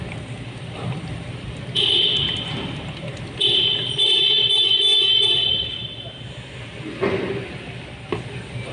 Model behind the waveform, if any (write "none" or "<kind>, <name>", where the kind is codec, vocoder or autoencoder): none